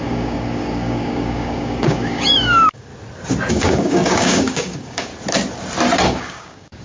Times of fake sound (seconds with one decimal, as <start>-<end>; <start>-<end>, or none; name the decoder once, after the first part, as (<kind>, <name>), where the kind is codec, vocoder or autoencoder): 0.0-2.9 (codec, DAC); 3.5-5.1; 6.1-6.8